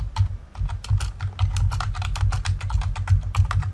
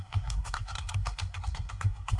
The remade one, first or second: second